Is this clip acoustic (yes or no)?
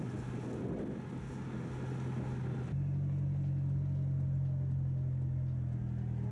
yes